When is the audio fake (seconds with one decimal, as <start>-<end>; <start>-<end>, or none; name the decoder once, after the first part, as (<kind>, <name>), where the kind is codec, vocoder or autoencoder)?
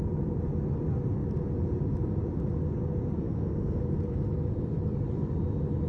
3.2-3.8 (codec, SNAC)